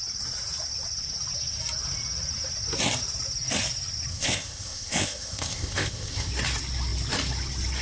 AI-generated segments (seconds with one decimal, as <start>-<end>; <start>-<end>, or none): 4.1-6.3